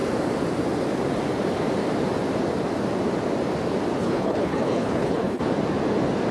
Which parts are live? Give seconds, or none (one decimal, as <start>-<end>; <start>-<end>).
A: 0.0-4.0; 5.4-6.3